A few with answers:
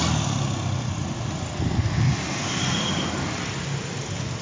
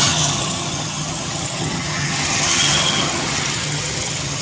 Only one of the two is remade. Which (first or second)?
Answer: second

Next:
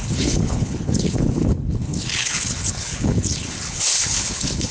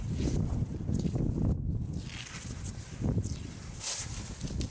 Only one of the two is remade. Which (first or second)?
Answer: first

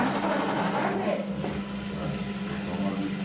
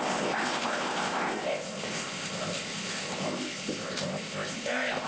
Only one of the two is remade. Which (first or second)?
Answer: second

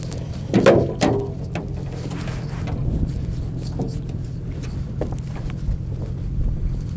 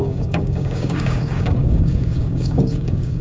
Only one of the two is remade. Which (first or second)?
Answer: second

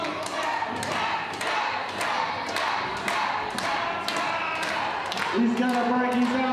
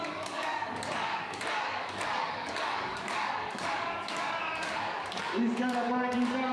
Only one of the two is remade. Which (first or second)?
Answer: second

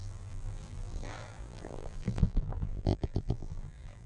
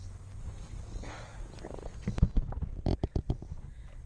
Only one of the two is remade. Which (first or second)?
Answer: first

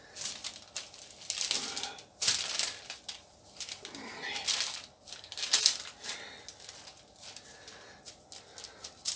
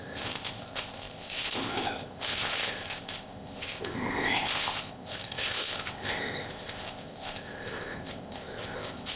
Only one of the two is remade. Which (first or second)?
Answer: second